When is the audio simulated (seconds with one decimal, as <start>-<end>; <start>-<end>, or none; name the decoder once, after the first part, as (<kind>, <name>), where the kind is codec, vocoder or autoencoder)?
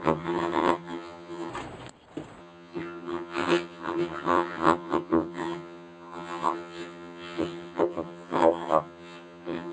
0.0-1.5 (vocoder, HiFi-GAN); 2.4-9.7